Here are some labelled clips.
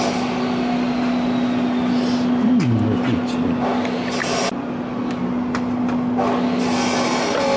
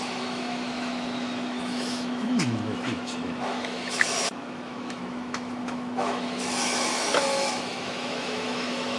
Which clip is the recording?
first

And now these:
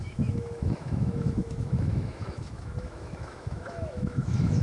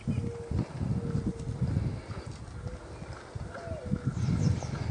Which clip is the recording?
second